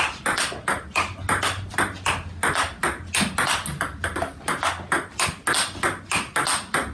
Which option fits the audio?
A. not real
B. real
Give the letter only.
B